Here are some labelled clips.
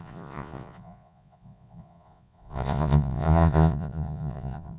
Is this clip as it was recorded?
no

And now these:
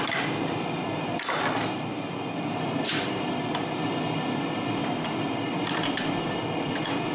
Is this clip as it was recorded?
yes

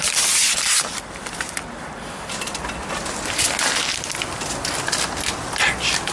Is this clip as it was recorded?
yes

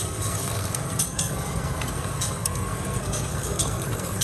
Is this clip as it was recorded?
no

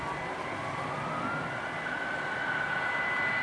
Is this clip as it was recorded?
yes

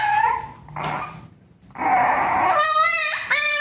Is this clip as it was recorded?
yes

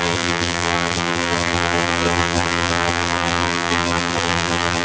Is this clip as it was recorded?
no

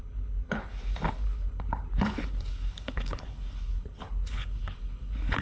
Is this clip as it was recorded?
no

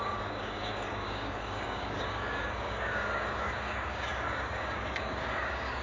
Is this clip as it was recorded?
no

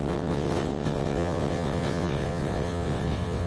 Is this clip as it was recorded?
no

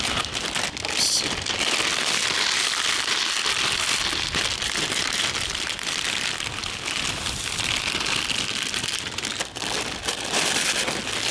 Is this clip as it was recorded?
yes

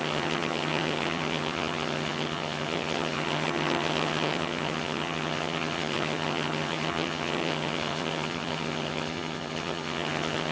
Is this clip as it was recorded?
no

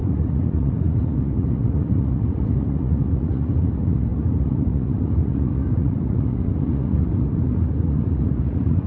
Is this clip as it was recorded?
no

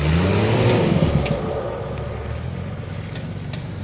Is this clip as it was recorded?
yes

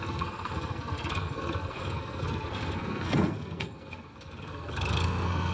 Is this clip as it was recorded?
no